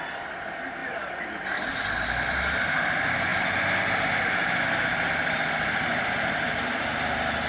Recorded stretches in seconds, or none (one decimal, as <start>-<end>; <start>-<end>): 0.0-7.5